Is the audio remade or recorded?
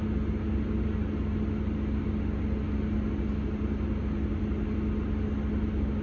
recorded